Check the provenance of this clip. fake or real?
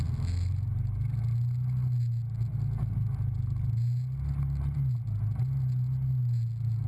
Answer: real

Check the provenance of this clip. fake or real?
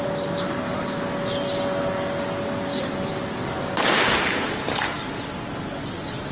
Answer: real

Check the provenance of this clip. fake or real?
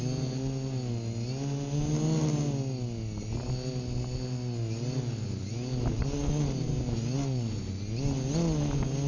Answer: real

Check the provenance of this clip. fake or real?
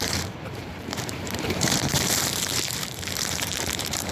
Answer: fake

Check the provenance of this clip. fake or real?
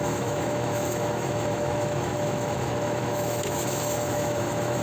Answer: fake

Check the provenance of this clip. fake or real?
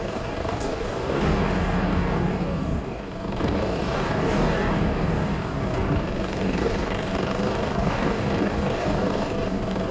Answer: fake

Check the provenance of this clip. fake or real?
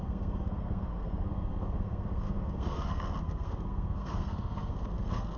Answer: fake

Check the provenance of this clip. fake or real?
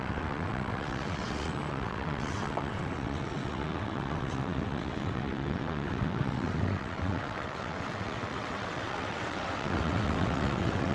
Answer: fake